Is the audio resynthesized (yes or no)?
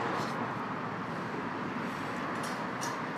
no